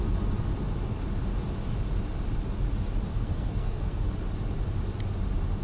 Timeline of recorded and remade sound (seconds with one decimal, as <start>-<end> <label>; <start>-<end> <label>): 0.0-3.1 recorded; 3.1-4.1 remade; 4.1-5.6 recorded